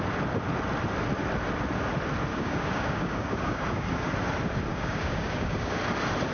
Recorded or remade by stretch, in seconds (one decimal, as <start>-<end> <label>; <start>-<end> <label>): 0.0-2.3 recorded; 2.3-4.1 remade; 4.1-4.7 recorded; 4.7-5.8 remade; 5.8-6.3 recorded